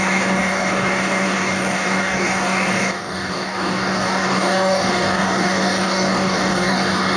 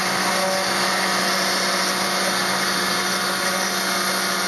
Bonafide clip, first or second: second